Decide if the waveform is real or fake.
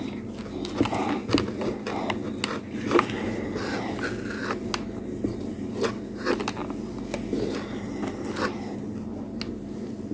real